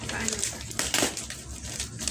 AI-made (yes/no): no